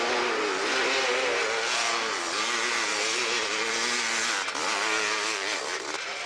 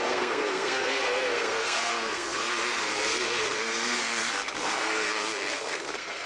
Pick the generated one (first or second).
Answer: second